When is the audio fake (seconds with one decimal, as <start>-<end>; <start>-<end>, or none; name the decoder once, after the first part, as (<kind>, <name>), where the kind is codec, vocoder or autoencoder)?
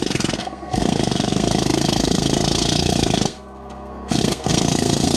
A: 0.0-5.2 (codec, SNAC)